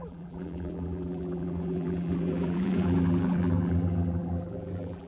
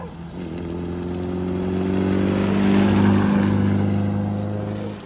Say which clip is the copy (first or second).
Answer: first